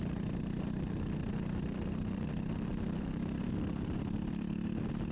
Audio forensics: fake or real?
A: real